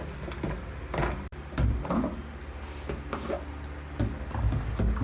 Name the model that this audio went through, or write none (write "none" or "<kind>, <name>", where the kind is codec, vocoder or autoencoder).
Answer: none